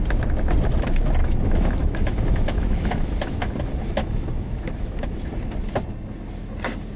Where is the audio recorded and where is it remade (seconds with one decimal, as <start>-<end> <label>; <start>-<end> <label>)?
0.0-1.2 recorded; 1.2-3.5 remade; 3.5-4.0 recorded; 4.0-5.2 remade; 5.2-7.0 recorded